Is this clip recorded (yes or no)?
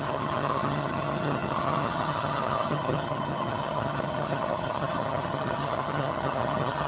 no